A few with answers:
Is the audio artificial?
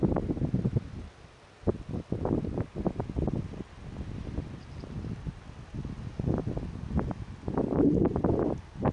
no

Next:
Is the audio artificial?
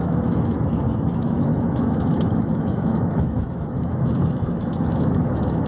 yes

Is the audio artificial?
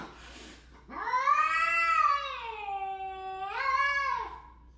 no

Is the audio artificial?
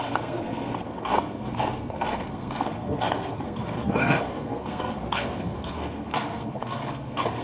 yes